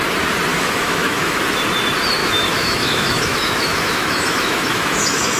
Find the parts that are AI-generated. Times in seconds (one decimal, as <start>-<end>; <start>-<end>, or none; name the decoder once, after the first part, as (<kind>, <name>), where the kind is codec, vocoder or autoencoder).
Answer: 0.5-1.4 (autoencoder, DAC-VAE); 2.2-5.4